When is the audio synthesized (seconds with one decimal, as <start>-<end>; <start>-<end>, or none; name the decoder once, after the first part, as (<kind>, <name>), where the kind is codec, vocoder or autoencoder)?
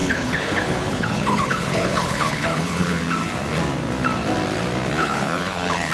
0.0-3.0 (codec, HILCodec); 5.0-5.9